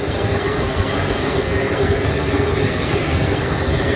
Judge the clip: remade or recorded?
remade